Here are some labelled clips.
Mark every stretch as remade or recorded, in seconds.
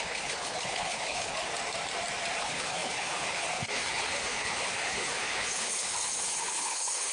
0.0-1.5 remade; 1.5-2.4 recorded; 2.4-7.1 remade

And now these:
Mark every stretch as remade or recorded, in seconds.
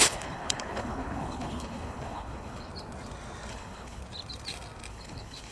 0.0-2.7 remade; 2.7-3.5 recorded; 3.5-4.0 remade; 4.0-4.9 recorded; 4.9-5.5 remade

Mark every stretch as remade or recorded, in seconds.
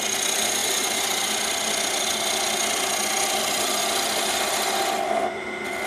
0.0-5.9 recorded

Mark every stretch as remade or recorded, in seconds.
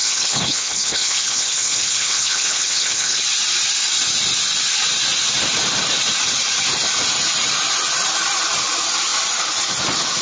0.0-3.2 remade; 3.2-10.2 recorded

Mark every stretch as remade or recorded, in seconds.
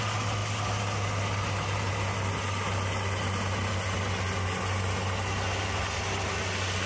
0.0-6.9 recorded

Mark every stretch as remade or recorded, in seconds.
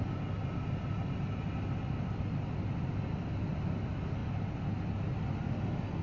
0.0-6.0 recorded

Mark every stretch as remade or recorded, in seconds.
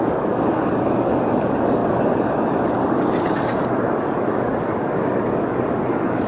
0.0-6.3 remade